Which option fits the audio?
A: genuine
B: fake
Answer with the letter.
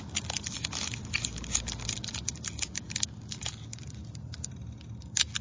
A